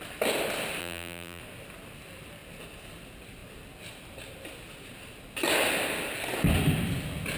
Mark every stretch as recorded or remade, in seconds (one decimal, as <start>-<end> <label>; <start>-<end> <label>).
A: 0.0-0.8 recorded; 0.8-1.4 remade; 1.4-7.4 recorded